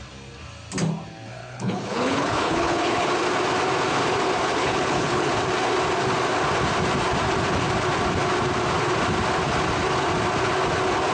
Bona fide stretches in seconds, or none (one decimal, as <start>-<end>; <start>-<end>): 0.0-1.4; 3.1-4.6; 5.3-11.1